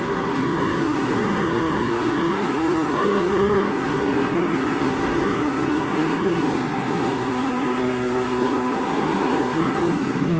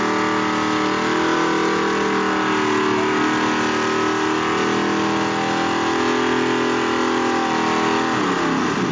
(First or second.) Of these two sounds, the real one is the second